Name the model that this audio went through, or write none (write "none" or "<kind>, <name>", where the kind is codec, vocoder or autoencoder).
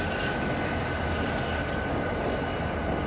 none